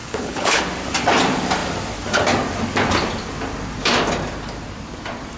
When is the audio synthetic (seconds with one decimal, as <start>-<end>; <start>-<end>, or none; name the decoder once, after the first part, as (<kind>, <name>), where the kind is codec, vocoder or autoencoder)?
0.0-0.6 (codec, HILCodec)